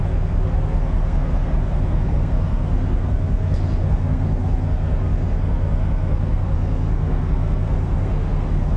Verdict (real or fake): fake